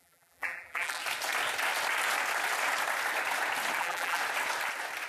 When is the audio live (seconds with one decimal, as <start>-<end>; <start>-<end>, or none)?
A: 1.0-3.8; 4.2-5.1